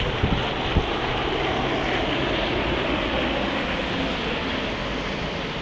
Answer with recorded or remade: recorded